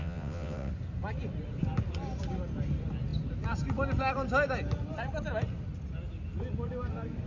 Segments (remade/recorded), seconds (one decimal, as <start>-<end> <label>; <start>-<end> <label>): 0.0-0.7 remade; 0.7-7.3 recorded